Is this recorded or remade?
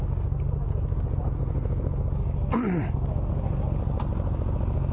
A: recorded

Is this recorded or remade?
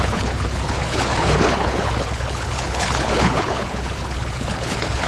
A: remade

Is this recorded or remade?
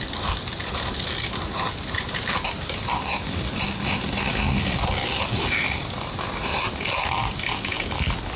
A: recorded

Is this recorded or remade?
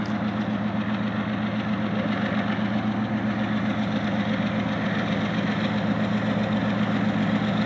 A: recorded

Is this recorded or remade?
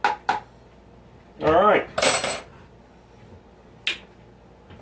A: recorded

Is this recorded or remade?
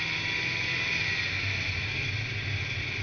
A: recorded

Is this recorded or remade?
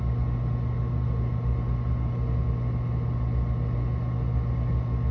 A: recorded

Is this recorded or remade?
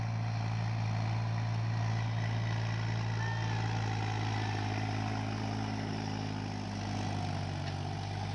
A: recorded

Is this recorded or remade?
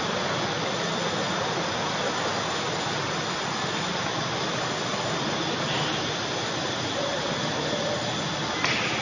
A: recorded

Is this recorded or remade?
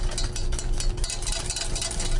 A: recorded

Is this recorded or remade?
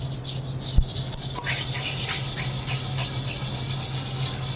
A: recorded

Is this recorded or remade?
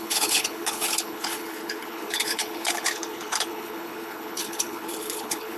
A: remade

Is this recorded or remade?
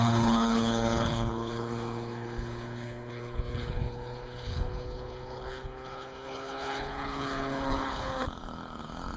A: remade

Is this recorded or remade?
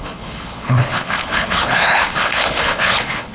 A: remade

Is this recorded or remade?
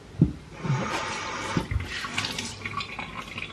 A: recorded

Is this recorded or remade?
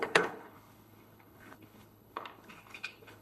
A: remade